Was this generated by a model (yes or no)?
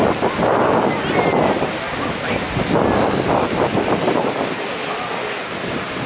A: no